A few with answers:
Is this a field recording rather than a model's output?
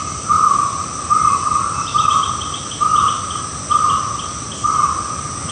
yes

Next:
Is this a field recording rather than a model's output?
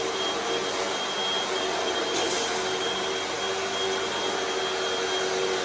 yes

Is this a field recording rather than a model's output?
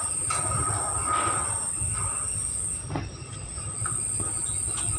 yes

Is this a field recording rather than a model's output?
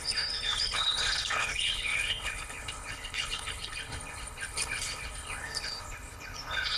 no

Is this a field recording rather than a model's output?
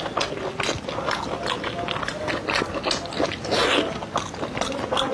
yes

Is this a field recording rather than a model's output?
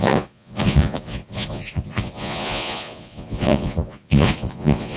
no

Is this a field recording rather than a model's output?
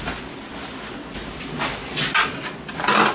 yes